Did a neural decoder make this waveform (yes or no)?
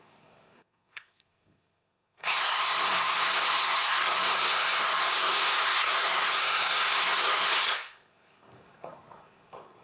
yes